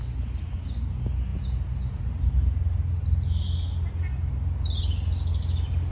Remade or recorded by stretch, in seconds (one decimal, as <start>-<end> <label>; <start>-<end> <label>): 0.0-5.9 recorded